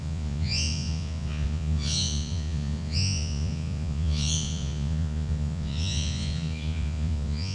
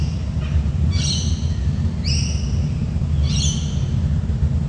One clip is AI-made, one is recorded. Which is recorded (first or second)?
second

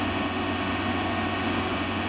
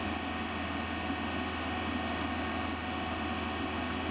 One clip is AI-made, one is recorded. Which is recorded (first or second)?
second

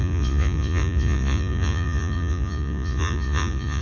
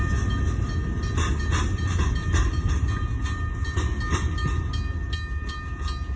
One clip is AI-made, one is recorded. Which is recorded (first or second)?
second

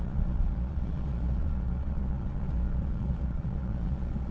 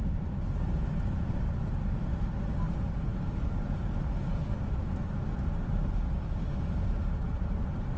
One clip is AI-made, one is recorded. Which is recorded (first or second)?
second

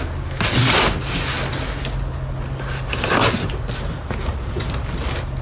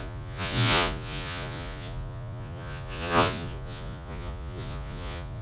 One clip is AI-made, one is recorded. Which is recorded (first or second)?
first